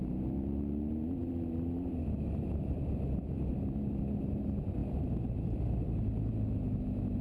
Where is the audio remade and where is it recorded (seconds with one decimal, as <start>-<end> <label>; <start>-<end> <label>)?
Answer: 0.0-1.2 recorded; 1.2-3.6 remade; 3.6-4.8 recorded; 4.8-5.6 remade; 5.6-7.2 recorded

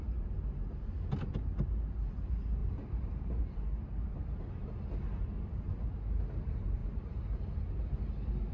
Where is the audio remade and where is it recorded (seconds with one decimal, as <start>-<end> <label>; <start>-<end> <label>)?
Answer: 0.0-2.6 recorded; 2.6-3.4 remade; 3.4-6.8 recorded; 6.8-7.4 remade; 7.4-8.5 recorded

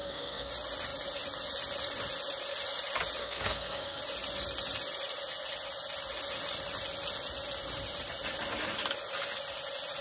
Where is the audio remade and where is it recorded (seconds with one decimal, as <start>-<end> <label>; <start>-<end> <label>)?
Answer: 0.0-0.5 remade; 0.5-3.2 recorded; 3.2-4.0 remade; 4.0-10.0 recorded

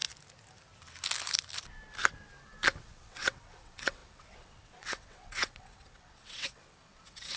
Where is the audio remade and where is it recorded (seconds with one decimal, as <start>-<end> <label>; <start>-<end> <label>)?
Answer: 0.0-2.8 recorded; 2.8-7.4 remade